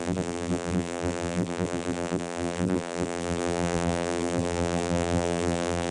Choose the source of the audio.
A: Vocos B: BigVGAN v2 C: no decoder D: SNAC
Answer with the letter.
B